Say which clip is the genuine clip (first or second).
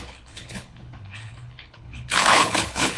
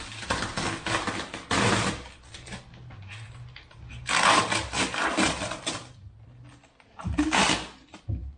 second